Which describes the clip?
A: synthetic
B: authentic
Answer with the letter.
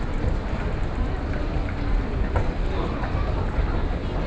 B